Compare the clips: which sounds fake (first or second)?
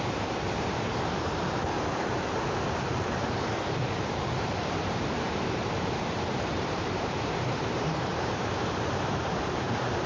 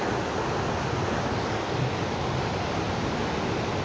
first